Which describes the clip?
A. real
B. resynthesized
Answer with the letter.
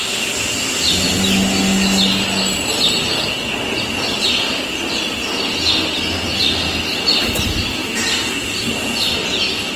A